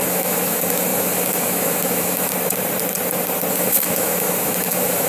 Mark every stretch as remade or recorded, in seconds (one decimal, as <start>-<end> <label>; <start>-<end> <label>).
0.0-2.3 remade; 2.3-3.5 recorded; 3.5-5.1 remade